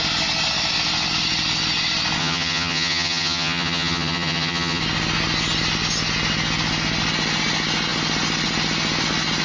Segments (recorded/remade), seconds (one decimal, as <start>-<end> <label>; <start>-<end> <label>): 0.0-2.2 recorded; 2.2-4.8 remade; 4.8-9.4 recorded